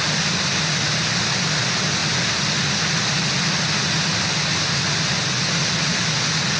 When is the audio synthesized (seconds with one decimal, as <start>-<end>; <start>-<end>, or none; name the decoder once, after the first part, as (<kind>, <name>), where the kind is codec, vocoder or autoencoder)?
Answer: none

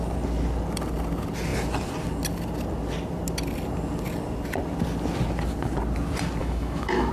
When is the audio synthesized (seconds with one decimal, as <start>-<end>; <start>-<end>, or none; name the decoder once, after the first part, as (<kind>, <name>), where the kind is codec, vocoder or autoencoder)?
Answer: 6.4-7.1 (autoencoder, DAC-VAE)

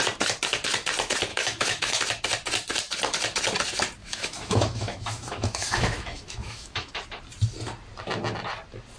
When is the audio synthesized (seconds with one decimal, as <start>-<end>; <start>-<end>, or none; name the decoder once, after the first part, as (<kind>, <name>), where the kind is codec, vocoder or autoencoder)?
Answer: 1.3-2.0 (autoencoder, DAC-VAE); 4.0-6.9

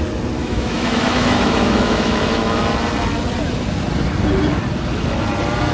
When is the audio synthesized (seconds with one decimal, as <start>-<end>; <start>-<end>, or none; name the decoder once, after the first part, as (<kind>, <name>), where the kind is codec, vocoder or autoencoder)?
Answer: 0.4-2.6 (autoencoder, DAC-VAE)

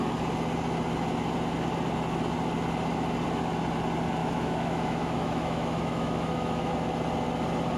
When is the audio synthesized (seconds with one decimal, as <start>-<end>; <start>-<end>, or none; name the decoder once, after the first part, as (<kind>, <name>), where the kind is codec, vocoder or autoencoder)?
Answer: 4.2-6.7 (autoencoder, DAC-VAE)

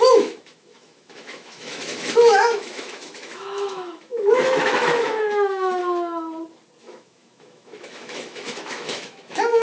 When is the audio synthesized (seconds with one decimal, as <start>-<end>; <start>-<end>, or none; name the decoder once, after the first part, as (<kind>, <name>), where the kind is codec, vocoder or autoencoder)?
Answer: 0.0-5.8 (autoencoder, DAC-VAE); 6.8-9.6